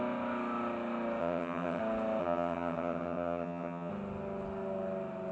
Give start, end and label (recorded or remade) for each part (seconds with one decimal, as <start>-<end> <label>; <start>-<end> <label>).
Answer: 0.0-1.2 recorded; 1.2-1.8 remade; 1.8-2.2 recorded; 2.2-3.9 remade; 3.9-5.3 recorded